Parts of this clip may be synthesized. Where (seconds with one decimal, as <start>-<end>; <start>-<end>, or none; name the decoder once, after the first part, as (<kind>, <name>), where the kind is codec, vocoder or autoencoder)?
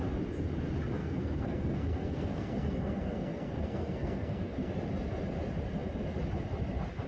1.0-4.7 (codec, SNAC)